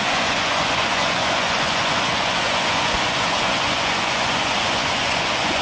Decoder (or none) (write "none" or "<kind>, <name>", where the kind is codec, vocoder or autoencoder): vocoder, Vocos